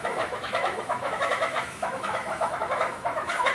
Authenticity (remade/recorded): remade